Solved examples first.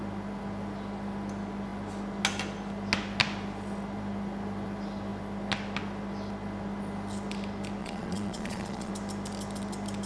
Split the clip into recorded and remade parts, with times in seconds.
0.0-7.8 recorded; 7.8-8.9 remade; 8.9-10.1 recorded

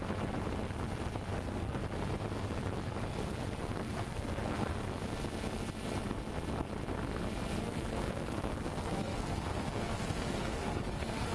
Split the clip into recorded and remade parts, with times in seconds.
0.0-1.3 recorded; 1.3-1.8 remade; 1.8-3.6 recorded; 3.6-4.7 remade; 4.7-7.6 recorded; 7.6-11.3 remade

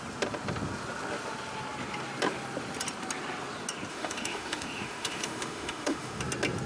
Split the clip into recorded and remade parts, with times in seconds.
0.0-3.9 recorded; 3.9-6.2 remade; 6.2-6.7 recorded

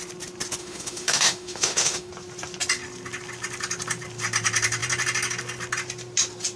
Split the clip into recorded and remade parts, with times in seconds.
0.0-0.6 recorded; 0.6-2.1 remade; 2.1-6.6 recorded

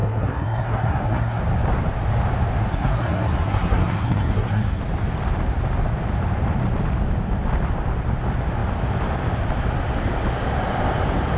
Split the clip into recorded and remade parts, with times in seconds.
0.0-1.4 remade; 1.4-2.7 recorded; 2.7-4.8 remade; 4.8-11.4 recorded

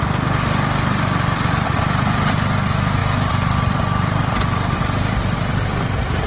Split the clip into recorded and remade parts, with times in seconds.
0.0-6.3 remade